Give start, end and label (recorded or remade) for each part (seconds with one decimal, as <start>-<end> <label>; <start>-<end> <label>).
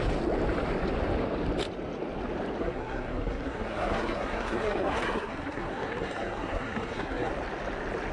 0.0-2.6 recorded; 2.6-7.3 remade; 7.3-8.1 recorded